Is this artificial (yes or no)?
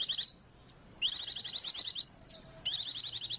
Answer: yes